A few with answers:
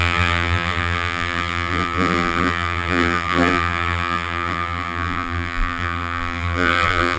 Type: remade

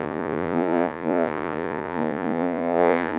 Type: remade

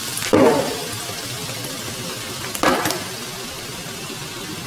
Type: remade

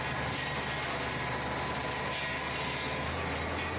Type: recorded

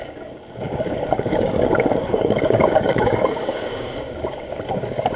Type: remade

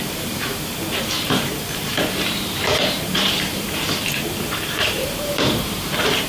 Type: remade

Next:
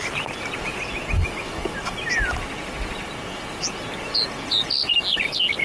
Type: recorded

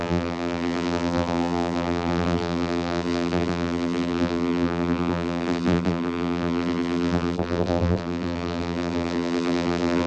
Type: remade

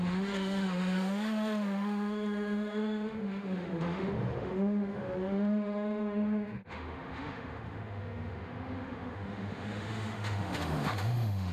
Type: remade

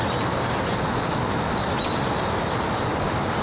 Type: recorded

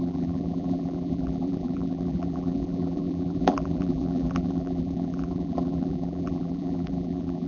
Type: remade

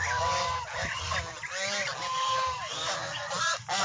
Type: recorded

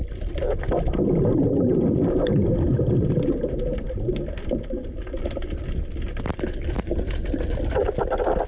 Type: remade